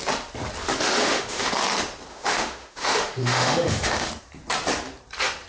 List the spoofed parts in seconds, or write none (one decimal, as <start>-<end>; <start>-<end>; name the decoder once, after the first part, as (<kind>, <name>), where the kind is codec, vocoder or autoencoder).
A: 1.0-1.5 (autoencoder, DAC-VAE); 2.1-4.1